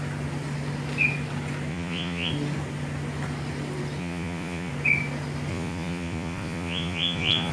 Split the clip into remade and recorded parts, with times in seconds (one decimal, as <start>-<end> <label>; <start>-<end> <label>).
0.0-1.7 recorded; 1.7-2.3 remade; 2.3-4.0 recorded; 4.0-4.7 remade; 4.7-5.5 recorded; 5.5-7.5 remade